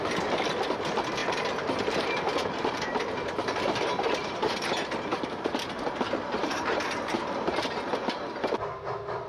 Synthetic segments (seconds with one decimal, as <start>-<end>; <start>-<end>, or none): 1.2-4.5; 5.1-7.2